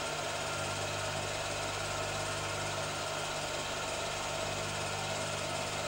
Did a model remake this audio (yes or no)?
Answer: no